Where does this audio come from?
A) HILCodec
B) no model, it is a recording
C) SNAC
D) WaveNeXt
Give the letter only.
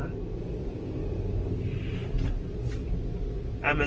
B